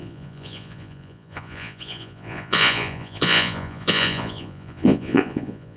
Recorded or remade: remade